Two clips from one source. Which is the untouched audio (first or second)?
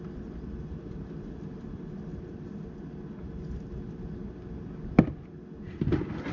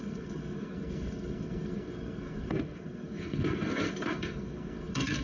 first